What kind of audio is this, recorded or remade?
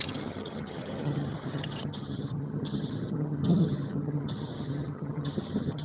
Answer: remade